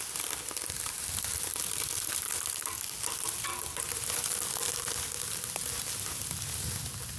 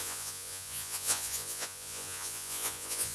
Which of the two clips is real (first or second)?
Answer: first